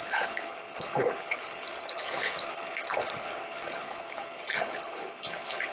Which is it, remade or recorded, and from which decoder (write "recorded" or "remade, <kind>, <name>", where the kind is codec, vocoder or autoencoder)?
remade, codec, HILCodec